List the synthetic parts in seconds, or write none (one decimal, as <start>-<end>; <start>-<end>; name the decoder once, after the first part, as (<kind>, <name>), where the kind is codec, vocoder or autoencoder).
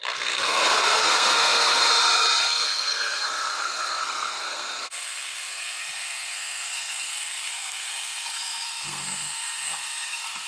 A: 0.0-1.8 (codec, SNAC); 2.4-10.5